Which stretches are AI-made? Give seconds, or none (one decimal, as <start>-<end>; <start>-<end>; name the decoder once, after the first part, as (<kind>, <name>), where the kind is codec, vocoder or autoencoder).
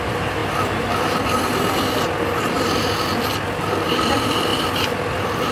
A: none